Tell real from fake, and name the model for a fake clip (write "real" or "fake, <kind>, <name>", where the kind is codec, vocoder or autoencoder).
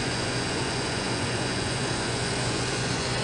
fake, vocoder, Vocos